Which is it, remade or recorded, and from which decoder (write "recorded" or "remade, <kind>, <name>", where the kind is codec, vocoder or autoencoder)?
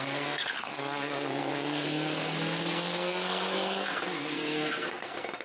remade, codec, SNAC